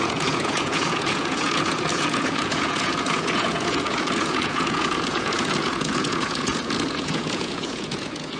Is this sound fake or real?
fake